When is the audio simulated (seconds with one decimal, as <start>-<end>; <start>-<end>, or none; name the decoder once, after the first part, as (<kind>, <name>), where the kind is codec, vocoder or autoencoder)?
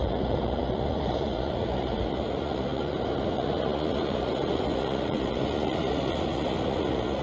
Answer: 0.0-7.2 (vocoder, Vocos)